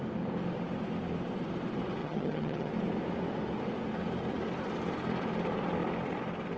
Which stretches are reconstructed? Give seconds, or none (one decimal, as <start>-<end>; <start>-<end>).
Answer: 2.0-2.7